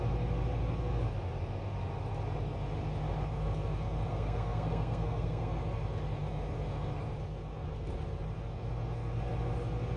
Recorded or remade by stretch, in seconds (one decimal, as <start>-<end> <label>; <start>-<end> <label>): 0.0-4.1 recorded; 4.1-5.6 remade; 5.6-10.0 recorded

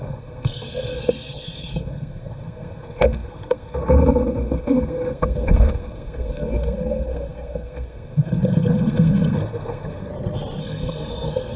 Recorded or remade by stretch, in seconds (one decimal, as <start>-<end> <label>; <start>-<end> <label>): 0.0-10.1 remade; 10.1-10.6 recorded; 10.6-11.6 remade

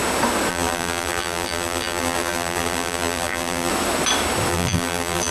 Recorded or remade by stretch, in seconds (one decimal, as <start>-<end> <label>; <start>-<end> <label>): 0.0-0.5 recorded; 0.5-3.7 remade; 3.7-4.5 recorded; 4.5-5.3 remade